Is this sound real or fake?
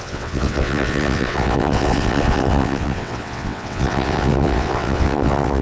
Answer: fake